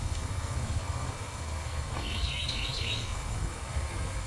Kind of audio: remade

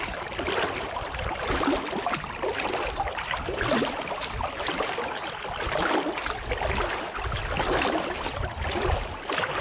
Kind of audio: recorded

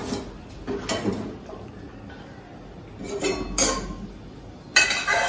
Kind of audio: recorded